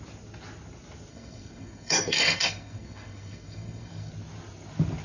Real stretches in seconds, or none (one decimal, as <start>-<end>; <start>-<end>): 0.0-1.1; 4.1-5.0